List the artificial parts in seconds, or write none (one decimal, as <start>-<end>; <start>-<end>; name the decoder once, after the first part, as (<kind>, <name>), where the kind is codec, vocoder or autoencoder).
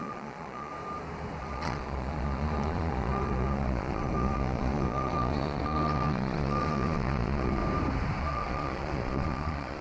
0.0-0.7 (vocoder, Vocos); 1.4-7.6; 8.2-9.8